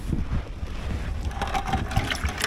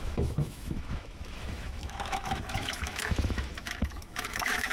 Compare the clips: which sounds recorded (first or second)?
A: first